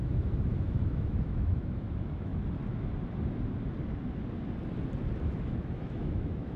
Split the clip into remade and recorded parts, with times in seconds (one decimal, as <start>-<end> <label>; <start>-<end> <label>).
0.0-2.3 remade; 2.3-5.2 recorded; 5.2-6.6 remade